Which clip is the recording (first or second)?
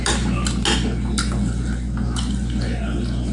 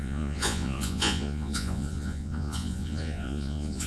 first